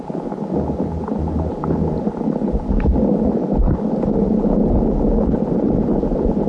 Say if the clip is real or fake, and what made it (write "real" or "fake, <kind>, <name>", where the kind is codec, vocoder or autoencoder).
real